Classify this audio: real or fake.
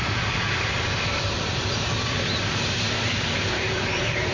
fake